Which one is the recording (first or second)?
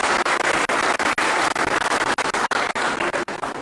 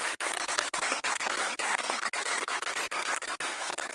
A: first